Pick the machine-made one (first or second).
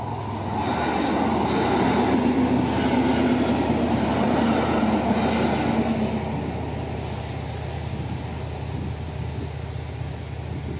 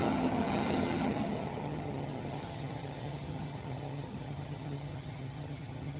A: second